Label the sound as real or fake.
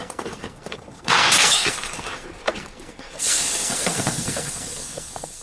fake